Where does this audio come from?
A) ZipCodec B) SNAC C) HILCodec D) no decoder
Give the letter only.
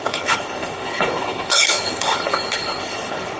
C